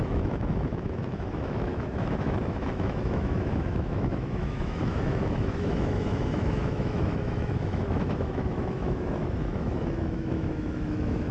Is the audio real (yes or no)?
no